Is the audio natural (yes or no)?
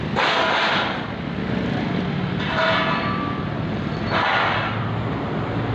yes